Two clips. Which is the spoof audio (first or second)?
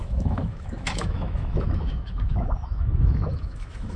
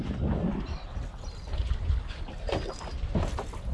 first